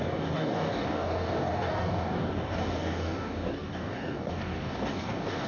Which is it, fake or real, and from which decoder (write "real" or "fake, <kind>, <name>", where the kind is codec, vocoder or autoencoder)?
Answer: fake, codec, DAC